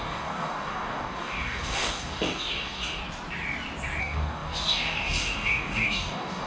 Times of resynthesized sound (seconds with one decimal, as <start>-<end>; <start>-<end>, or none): 0.0-3.0; 4.0-6.5